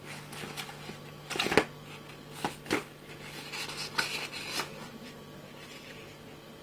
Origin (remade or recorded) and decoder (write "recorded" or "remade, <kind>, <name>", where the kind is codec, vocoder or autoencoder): recorded